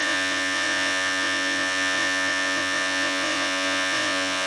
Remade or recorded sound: remade